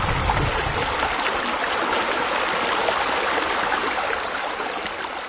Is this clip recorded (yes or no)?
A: yes